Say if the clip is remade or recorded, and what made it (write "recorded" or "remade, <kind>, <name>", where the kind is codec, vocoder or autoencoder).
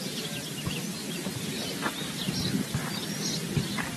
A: recorded